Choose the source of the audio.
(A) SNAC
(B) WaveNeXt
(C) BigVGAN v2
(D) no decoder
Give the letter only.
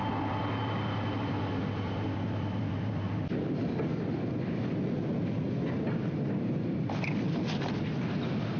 D